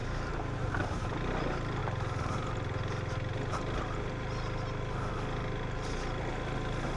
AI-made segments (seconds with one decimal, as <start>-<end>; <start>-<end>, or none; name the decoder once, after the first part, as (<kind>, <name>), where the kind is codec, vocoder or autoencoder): 0.0-1.0 (vocoder, BigVGAN v2)